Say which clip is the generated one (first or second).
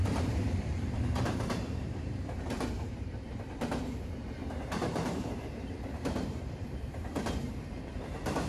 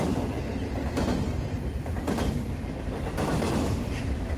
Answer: first